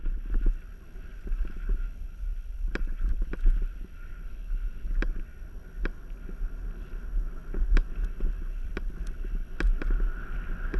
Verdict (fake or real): real